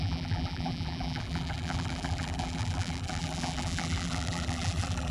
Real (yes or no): no